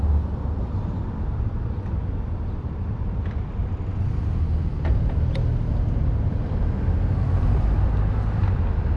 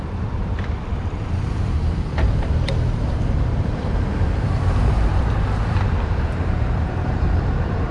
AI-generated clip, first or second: second